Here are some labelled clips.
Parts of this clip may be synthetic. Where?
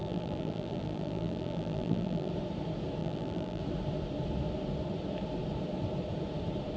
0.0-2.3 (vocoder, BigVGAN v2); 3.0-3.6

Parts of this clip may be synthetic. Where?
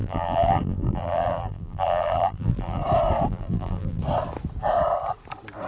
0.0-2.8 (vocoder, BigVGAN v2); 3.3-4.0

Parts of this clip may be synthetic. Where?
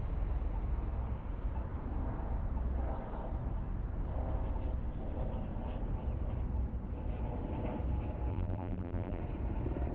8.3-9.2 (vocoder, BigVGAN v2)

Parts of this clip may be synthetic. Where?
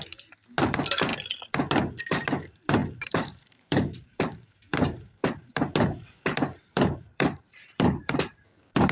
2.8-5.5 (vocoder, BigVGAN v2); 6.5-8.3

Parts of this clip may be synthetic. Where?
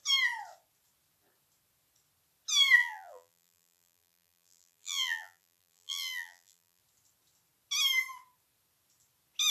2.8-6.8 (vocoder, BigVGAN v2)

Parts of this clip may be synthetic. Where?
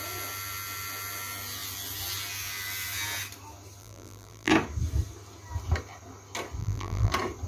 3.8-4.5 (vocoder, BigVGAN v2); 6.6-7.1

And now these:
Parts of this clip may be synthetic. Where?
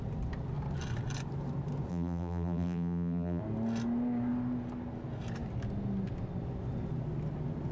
1.9-3.4 (vocoder, BigVGAN v2)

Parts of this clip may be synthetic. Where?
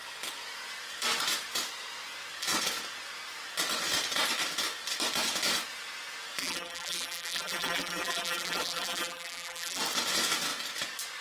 6.4-9.8 (vocoder, BigVGAN v2)